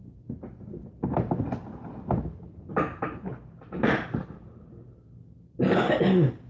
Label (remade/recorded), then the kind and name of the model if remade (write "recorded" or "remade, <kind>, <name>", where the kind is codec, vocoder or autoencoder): recorded